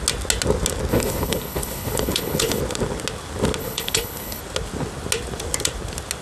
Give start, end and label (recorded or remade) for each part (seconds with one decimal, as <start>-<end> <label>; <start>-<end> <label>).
0.0-0.9 recorded; 0.9-2.6 remade; 2.6-3.6 recorded; 3.6-4.4 remade; 4.4-6.2 recorded